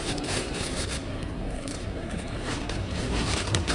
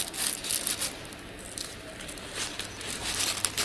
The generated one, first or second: first